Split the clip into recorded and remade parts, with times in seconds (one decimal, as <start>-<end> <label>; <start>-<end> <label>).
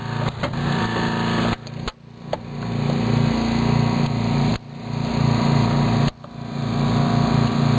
0.0-7.8 recorded